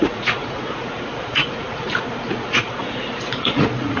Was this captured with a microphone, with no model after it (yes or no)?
no